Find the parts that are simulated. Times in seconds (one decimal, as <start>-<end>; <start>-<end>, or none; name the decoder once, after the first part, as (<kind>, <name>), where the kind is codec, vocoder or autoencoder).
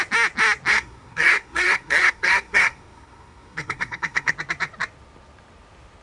0.7-4.3 (codec, SNAC)